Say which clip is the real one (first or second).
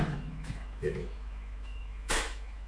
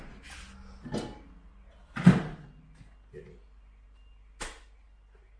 second